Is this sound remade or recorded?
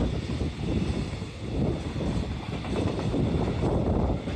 recorded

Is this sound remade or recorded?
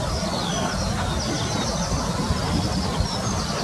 recorded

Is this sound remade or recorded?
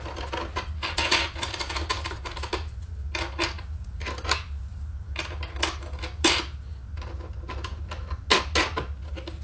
recorded